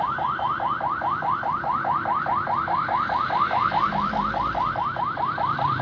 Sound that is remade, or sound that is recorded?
remade